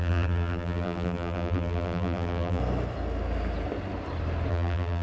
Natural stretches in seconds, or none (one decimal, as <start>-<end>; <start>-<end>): 2.6-4.5